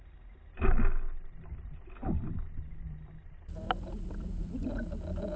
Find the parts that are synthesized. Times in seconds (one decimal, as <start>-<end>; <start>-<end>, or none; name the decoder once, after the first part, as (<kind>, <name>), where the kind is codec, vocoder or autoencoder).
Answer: 2.0-4.6 (vocoder, BigVGAN v2)